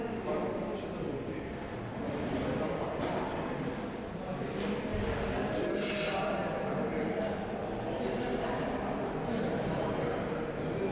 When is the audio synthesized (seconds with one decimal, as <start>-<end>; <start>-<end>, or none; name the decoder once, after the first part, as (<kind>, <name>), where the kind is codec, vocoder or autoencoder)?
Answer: none